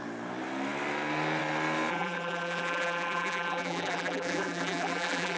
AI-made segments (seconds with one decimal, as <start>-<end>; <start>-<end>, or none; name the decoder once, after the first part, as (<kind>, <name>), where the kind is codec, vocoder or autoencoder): 1.9-5.4 (vocoder, BigVGAN v2)